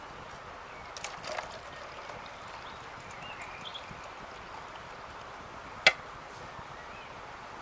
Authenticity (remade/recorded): recorded